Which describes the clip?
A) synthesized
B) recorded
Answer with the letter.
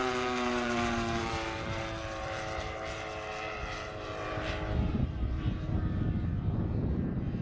A